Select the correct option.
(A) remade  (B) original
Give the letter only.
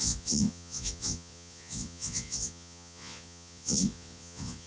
A